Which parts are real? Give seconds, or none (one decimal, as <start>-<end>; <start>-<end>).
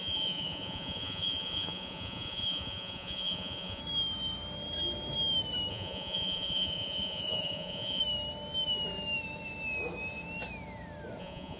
3.8-5.7; 8.0-11.2